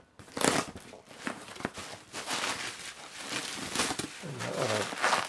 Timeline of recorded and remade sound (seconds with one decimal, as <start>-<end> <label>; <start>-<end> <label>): 0.0-5.3 recorded